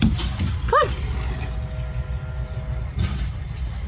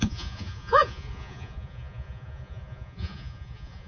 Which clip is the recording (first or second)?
first